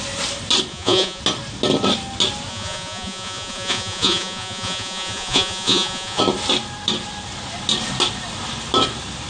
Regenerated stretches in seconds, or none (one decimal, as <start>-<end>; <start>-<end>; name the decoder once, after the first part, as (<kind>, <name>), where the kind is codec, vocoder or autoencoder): 0.7-1.2 (vocoder, Vocos); 2.5-6.2